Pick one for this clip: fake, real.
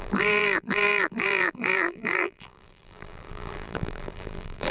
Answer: fake